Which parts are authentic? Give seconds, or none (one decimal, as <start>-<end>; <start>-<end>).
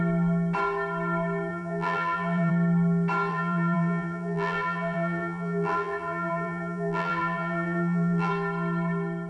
0.0-1.5; 2.5-3.3; 8.3-9.3